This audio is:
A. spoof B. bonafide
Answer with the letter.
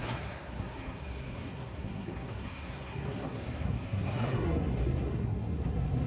A